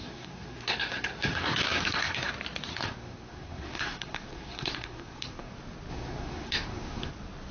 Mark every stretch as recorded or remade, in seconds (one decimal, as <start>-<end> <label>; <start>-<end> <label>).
0.0-2.3 remade; 2.3-2.7 recorded; 2.7-5.5 remade; 5.5-5.9 recorded; 5.9-7.1 remade; 7.1-7.5 recorded